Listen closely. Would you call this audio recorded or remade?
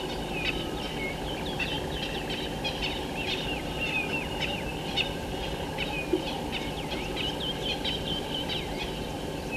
remade